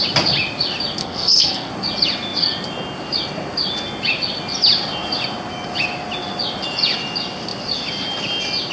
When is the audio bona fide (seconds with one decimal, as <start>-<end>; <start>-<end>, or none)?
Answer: 0.0-1.0; 1.7-8.7